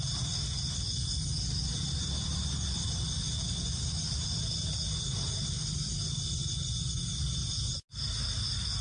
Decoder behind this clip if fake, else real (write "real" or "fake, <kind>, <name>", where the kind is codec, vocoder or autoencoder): real